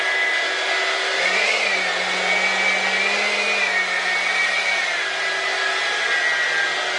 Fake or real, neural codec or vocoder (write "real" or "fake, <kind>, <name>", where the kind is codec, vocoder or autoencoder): real